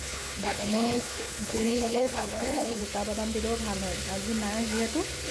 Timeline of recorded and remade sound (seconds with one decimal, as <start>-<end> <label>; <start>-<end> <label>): 0.0-2.8 remade; 2.8-5.3 recorded